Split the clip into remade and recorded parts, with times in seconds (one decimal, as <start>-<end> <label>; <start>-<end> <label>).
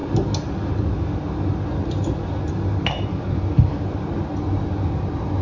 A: 0.0-5.4 recorded